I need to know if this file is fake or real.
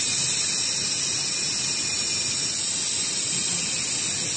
real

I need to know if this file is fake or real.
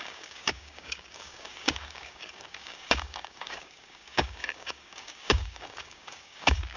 fake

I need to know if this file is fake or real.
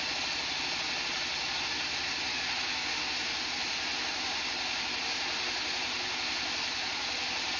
real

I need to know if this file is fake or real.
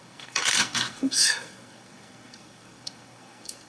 fake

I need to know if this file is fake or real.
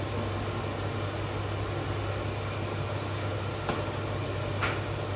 real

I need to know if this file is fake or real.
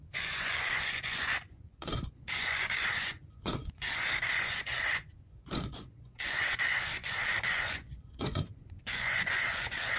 fake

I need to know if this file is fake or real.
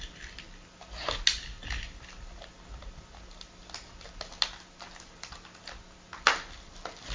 real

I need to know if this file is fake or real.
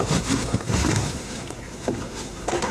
fake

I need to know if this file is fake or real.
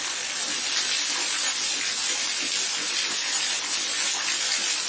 real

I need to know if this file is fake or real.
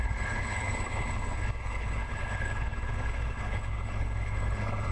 fake